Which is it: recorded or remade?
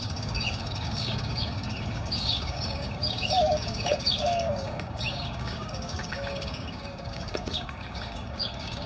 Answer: remade